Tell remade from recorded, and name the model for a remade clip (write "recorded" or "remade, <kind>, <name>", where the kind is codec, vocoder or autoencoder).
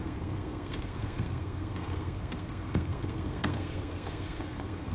remade, codec, SNAC